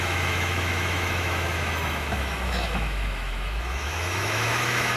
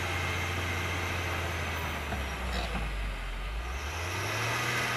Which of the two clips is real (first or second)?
second